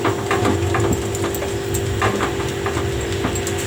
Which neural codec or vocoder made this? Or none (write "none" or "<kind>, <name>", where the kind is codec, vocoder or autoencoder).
none